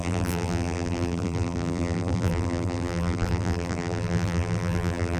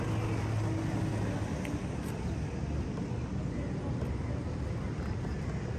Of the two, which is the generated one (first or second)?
first